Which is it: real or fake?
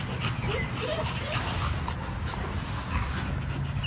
real